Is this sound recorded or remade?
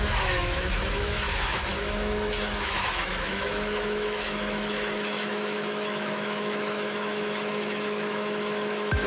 remade